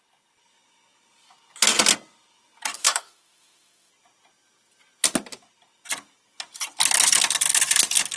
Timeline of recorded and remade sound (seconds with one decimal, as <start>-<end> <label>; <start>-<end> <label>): 0.0-2.8 recorded; 2.8-3.9 remade; 3.9-8.2 recorded